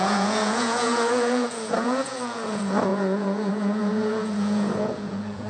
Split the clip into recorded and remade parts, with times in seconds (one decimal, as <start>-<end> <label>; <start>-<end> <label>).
0.0-5.5 remade